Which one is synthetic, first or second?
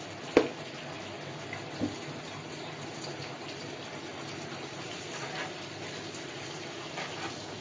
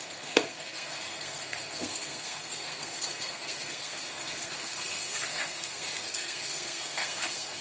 second